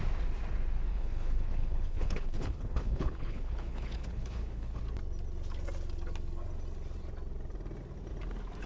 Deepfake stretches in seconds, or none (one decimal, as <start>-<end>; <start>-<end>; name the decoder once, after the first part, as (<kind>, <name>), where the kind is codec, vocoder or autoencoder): 0.9-4.8 (codec, HILCodec)